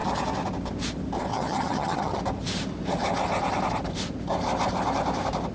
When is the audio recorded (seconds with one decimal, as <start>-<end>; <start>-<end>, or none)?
0.0-1.3; 2.2-5.5